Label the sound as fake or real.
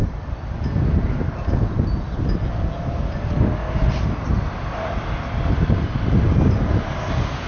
real